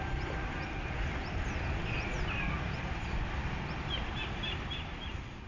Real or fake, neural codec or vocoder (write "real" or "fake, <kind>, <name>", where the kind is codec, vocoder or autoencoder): fake, vocoder, BigVGAN v2